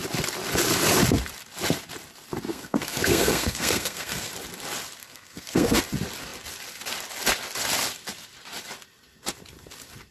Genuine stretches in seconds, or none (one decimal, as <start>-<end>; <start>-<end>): 0.0-2.5; 4.3-5.0; 5.8-10.1